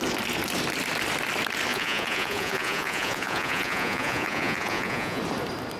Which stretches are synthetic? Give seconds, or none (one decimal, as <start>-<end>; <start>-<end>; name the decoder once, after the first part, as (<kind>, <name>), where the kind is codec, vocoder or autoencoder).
1.7-5.2 (vocoder, Vocos)